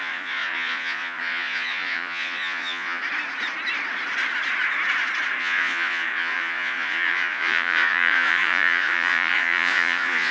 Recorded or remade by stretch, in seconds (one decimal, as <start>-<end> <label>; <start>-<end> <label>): 0.0-3.0 remade; 3.0-5.4 recorded; 5.4-10.3 remade